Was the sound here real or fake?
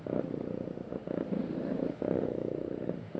fake